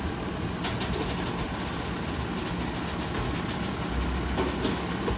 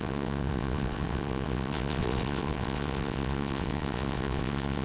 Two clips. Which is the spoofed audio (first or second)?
second